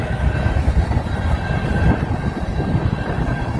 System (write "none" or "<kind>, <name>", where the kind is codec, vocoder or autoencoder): none